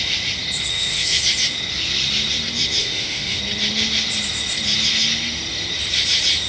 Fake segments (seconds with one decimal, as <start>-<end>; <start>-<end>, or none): 0.7-1.2; 2.8-3.4